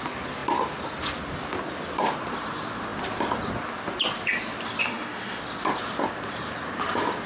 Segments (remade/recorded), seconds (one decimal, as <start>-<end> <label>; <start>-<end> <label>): 0.0-4.8 recorded; 4.8-5.4 remade; 5.4-7.3 recorded